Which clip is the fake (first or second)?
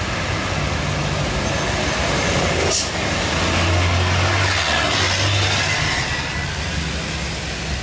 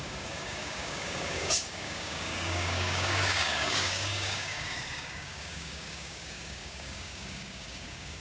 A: second